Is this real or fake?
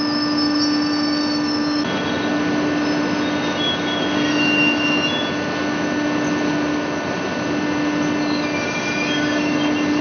real